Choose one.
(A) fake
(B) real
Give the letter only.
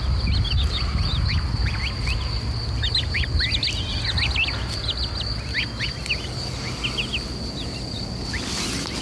B